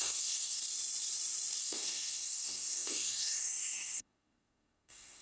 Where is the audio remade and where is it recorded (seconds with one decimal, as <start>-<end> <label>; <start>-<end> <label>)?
0.0-0.6 remade; 0.6-1.6 recorded; 1.6-5.2 remade